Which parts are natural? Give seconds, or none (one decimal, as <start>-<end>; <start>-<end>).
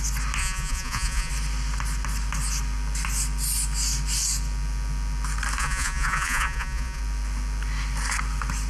0.0-0.4; 1.3-5.6; 7.0-8.7